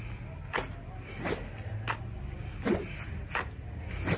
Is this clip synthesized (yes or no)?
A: no